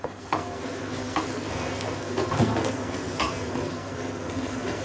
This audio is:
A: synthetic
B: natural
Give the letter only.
A